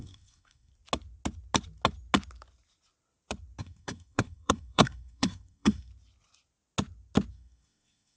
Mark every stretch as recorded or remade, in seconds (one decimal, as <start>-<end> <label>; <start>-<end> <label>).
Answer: 0.0-0.7 remade; 0.7-3.6 recorded; 3.6-5.9 remade; 5.9-7.3 recorded; 7.3-8.2 remade